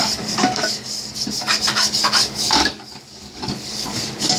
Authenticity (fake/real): fake